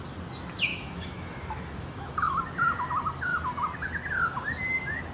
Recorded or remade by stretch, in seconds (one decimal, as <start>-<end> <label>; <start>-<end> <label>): 0.0-0.7 recorded; 0.7-2.4 remade; 2.4-5.1 recorded